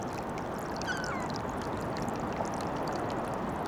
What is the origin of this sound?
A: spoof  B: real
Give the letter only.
B